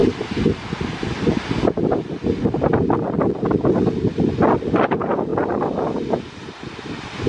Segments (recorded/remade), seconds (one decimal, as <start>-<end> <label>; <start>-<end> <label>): 0.0-7.3 recorded